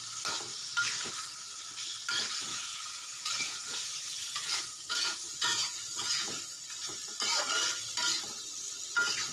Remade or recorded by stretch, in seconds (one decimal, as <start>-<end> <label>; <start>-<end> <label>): 0.0-2.5 recorded; 2.5-6.4 remade; 6.4-9.3 recorded